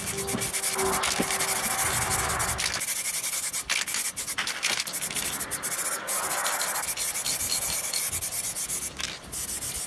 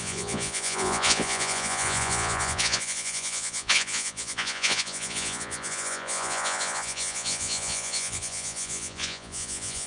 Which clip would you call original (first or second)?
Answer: first